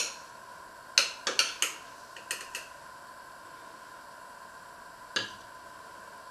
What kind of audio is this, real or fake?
real